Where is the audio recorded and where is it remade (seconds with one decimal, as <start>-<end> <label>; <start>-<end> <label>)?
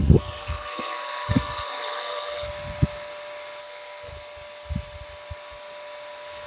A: 0.0-2.5 remade; 2.5-3.6 recorded; 3.6-4.1 remade; 4.1-6.5 recorded